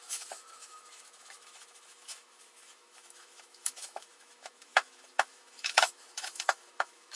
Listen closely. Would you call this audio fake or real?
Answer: fake